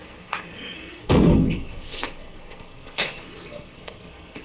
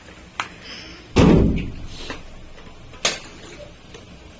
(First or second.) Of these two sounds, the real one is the second